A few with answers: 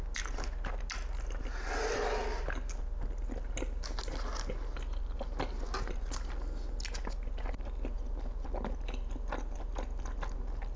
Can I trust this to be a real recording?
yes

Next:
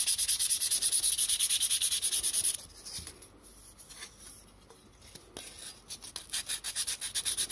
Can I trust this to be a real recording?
yes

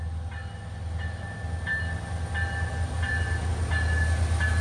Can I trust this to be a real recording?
yes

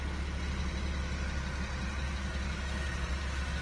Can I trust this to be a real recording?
yes